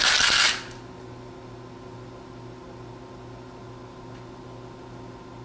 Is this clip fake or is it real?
real